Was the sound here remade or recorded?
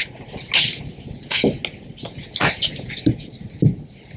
recorded